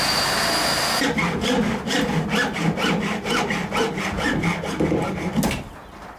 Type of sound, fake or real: real